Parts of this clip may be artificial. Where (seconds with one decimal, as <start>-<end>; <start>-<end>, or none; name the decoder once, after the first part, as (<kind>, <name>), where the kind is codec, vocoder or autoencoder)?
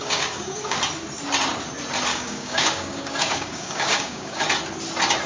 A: 0.0-0.8 (codec, DAC); 2.1-4.4